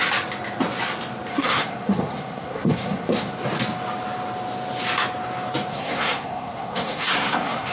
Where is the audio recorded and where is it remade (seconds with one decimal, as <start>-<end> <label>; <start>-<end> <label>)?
0.0-1.3 recorded; 1.3-3.3 remade; 3.3-5.7 recorded; 5.7-7.7 remade